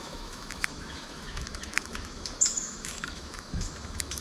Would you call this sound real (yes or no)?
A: no